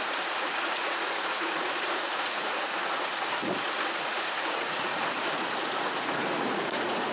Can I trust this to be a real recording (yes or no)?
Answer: no